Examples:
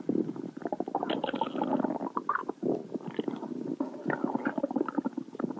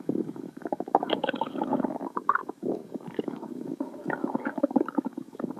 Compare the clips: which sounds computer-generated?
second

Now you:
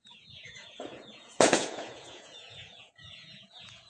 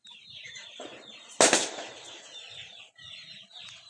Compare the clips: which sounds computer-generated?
first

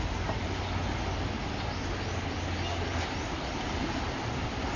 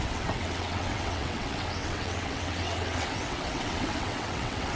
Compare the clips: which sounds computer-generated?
second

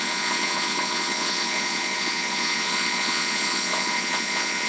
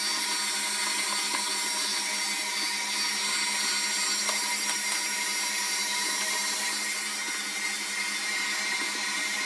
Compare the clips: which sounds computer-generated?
first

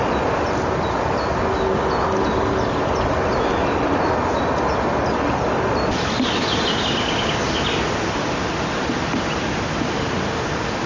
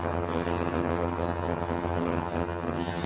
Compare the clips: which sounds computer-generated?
second